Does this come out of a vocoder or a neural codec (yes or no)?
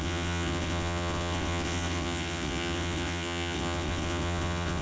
yes